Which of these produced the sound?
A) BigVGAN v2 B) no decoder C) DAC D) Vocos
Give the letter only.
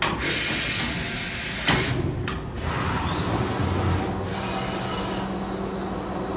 B